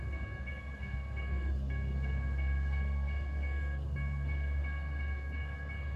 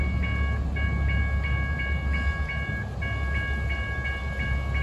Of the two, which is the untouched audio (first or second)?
second